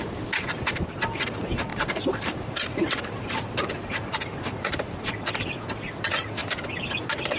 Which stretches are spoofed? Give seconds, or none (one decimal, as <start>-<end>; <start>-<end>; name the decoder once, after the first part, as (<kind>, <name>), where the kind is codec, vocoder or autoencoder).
1.7-5.7 (vocoder, BigVGAN v2); 6.4-7.4